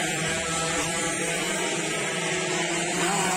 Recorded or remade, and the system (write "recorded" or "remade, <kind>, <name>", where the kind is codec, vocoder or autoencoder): remade, vocoder, BigVGAN v2